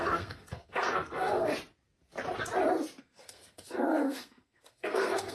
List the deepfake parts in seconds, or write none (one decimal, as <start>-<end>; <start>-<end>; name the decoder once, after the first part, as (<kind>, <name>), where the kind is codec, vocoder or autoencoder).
0.0-1.5 (codec, SNAC); 3.0-5.3